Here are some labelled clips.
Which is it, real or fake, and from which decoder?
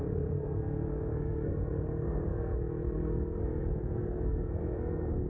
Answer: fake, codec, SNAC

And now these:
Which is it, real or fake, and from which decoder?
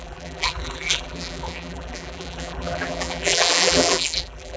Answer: fake, vocoder, BigVGAN v2